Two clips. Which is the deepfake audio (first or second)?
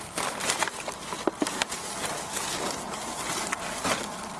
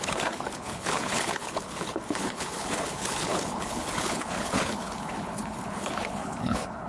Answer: second